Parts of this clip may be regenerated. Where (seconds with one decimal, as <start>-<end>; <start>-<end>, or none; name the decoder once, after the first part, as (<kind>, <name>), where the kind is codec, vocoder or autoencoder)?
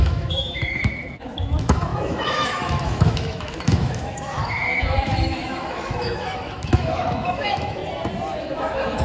0.0-7.8 (autoencoder, DAC-VAE); 8.4-9.0